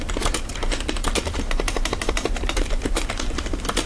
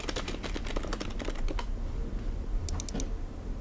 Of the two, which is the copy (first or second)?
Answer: first